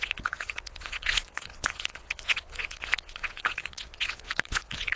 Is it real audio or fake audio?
fake